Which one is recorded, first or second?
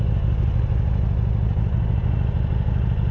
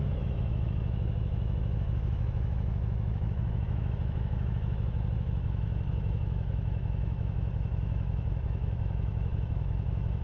first